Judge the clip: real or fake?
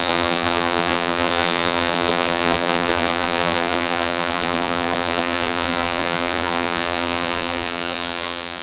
fake